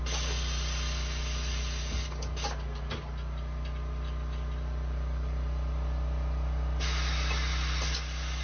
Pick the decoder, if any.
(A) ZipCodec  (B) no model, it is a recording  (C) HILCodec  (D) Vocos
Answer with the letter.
B